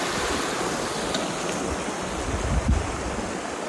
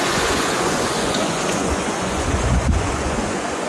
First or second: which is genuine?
first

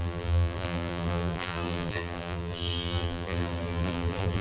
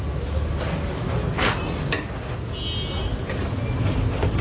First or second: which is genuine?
second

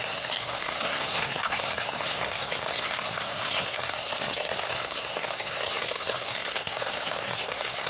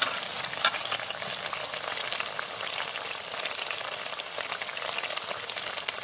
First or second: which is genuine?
second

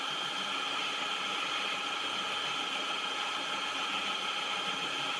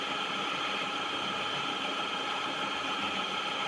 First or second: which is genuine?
first